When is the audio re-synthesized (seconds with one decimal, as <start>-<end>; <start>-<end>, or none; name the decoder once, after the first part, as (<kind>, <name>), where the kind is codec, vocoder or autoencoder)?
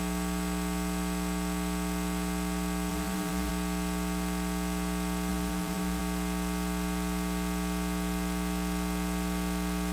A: 2.9-3.5 (vocoder, BigVGAN v2); 5.3-6.0